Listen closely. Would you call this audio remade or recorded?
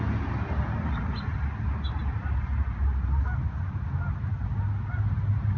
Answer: recorded